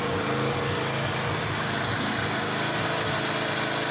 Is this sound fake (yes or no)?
no